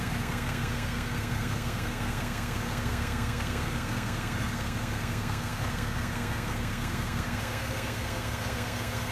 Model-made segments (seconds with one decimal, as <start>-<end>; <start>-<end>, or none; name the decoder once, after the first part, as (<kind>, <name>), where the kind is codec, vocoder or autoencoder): 0.0-9.1 (codec, SNAC)